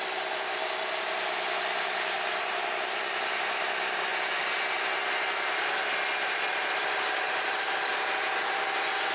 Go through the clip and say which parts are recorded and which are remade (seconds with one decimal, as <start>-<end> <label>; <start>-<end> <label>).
0.0-9.1 recorded